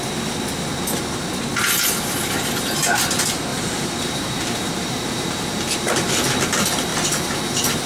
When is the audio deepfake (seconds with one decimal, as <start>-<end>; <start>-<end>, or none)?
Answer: 3.5-6.1; 6.9-7.9